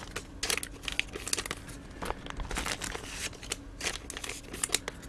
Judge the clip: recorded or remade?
recorded